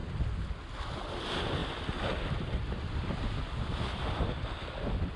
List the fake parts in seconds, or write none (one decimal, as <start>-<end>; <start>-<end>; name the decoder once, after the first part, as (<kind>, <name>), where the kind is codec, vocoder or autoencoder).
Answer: 1.6-4.7 (vocoder, BigVGAN v2)